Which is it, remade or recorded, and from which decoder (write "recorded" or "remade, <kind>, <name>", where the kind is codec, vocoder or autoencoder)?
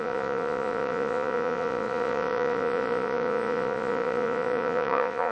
remade, vocoder, Vocos